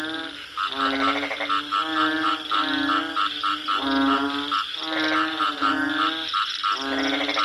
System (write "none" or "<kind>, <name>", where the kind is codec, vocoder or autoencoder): none